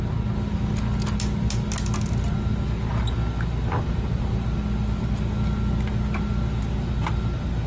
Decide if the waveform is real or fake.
real